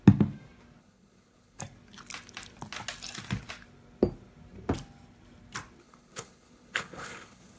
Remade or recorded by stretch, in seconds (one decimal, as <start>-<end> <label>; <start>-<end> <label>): 0.0-0.8 recorded; 0.8-1.6 remade; 1.6-5.8 recorded; 5.8-7.6 remade